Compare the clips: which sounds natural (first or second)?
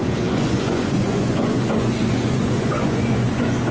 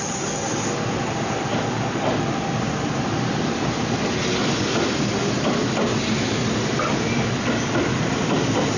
second